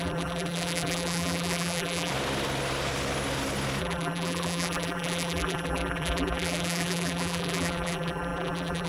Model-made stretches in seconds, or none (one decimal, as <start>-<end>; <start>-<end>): 0.0-2.1; 3.8-8.9